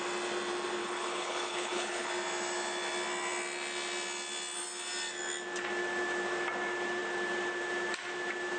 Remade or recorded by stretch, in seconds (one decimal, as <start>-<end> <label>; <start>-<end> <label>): 0.0-0.8 recorded; 0.8-2.1 remade; 2.1-8.6 recorded